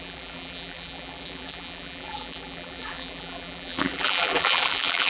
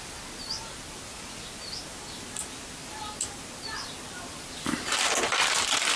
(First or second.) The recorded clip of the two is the second